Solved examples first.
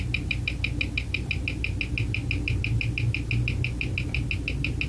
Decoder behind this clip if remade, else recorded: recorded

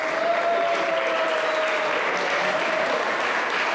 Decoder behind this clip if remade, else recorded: recorded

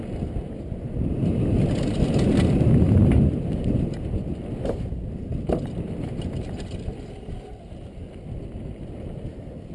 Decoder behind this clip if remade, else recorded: recorded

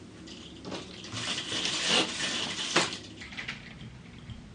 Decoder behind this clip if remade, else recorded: recorded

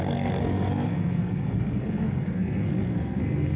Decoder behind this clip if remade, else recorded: remade, codec, SNAC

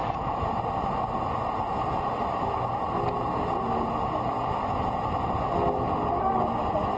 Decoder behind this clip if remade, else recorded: recorded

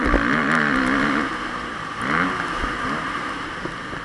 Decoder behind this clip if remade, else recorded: recorded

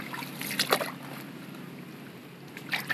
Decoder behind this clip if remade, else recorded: recorded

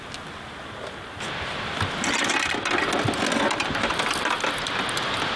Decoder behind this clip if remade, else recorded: recorded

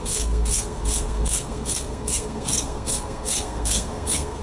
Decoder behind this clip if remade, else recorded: remade, codec, SNAC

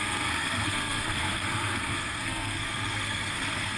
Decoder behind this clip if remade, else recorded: remade, codec, SNAC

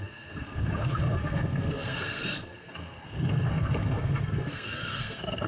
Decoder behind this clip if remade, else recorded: remade, codec, SNAC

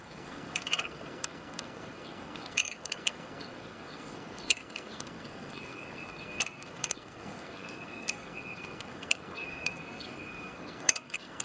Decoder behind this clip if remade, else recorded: remade, codec, SNAC